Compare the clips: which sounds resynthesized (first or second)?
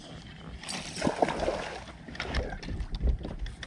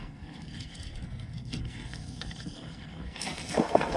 second